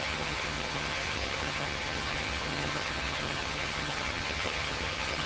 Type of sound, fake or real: fake